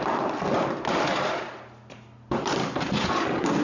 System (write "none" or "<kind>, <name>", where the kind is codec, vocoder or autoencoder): none